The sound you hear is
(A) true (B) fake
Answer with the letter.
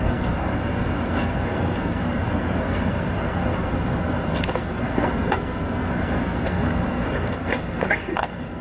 B